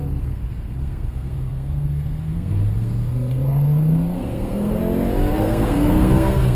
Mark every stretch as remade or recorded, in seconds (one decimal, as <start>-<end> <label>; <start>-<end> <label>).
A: 0.0-4.8 remade; 4.8-5.3 recorded; 5.3-6.5 remade